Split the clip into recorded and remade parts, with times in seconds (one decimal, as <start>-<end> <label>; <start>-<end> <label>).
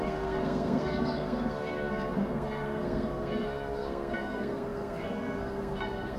0.0-6.2 remade